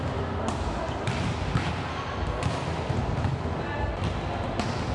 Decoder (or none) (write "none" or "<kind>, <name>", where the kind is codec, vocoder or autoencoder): none